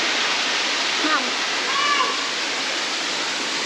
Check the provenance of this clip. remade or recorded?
recorded